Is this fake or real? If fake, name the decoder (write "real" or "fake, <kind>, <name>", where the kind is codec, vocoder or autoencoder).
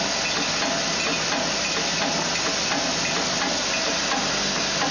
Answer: real